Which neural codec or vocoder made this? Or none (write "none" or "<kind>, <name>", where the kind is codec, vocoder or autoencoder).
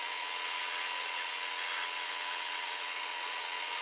vocoder, WaveNeXt